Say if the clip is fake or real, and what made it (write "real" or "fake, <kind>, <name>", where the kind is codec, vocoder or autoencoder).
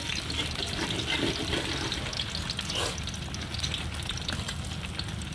real